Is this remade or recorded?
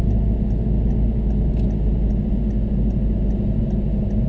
recorded